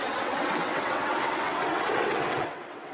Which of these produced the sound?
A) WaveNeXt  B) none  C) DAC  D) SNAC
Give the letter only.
A